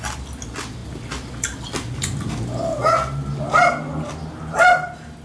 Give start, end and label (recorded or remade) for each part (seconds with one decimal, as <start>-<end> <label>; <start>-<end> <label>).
0.0-5.2 recorded